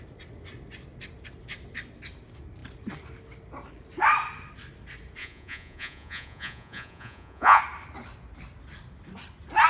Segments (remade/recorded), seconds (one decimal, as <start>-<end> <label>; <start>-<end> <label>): 0.0-5.2 recorded; 5.2-7.6 remade; 7.6-9.7 recorded